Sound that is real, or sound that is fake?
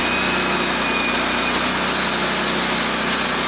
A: real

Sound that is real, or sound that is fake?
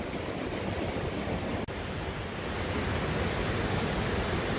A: real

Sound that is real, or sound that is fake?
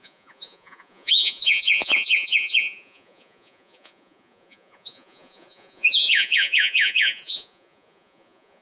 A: fake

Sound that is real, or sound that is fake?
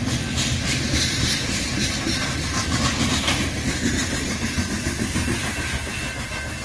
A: real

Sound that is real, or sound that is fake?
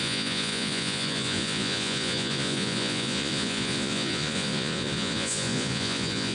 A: fake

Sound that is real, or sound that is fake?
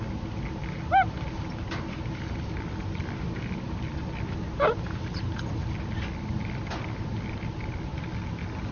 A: real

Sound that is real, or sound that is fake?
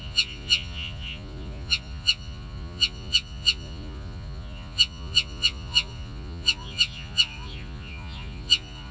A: fake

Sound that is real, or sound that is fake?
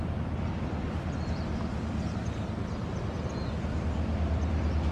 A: real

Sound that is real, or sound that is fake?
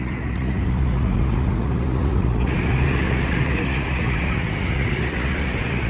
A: fake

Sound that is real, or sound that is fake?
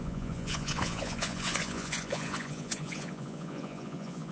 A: fake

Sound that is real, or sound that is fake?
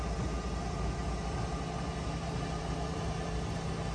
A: real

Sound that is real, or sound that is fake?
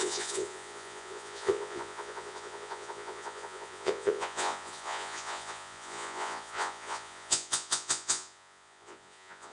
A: fake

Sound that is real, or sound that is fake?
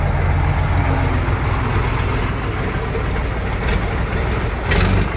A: real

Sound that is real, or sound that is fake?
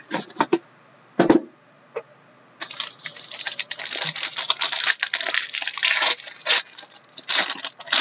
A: real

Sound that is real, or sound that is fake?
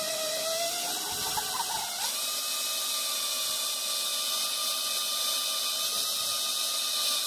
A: real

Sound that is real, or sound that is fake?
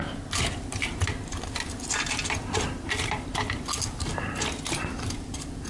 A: real